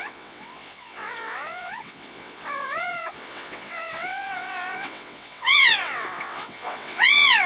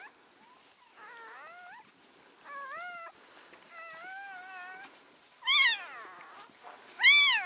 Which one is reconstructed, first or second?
first